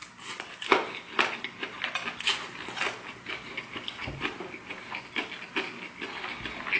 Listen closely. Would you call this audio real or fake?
real